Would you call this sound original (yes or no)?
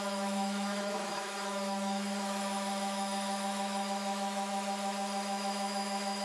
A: no